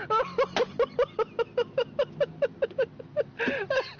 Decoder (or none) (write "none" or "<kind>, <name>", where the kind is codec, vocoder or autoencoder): none